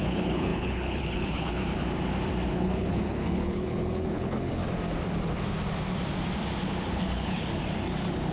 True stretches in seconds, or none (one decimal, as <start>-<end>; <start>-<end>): 1.6-2.5; 4.6-6.9; 7.5-8.3